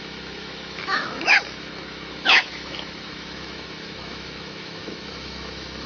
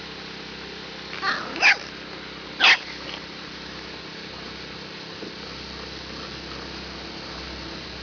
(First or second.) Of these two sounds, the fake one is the first